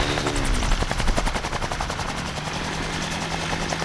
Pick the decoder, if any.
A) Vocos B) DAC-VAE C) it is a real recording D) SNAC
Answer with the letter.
C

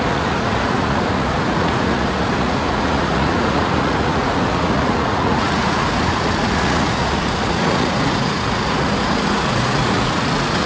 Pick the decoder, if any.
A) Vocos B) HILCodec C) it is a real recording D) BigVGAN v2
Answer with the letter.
A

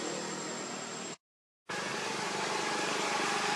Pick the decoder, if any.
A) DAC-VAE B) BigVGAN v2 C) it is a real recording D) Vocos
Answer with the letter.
C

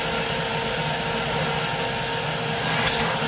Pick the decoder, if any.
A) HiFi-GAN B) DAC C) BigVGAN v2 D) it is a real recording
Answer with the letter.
D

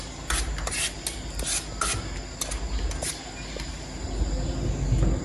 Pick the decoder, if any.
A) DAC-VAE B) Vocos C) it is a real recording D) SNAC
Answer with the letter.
C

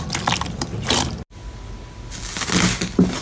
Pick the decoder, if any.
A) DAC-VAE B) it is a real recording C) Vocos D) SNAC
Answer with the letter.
B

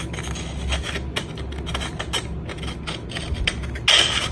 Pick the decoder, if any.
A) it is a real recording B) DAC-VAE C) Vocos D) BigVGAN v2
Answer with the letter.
A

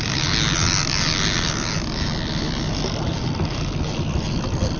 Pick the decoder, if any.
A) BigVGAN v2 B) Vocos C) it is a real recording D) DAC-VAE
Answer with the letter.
C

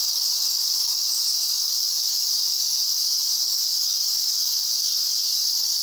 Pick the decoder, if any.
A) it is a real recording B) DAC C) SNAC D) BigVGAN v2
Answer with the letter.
B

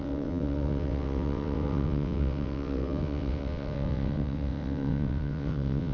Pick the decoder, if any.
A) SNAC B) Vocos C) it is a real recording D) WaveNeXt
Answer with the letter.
D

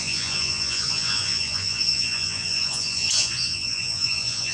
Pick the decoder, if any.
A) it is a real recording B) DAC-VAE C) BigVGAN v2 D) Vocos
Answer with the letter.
D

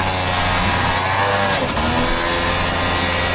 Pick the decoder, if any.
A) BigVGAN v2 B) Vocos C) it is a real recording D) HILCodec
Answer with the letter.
C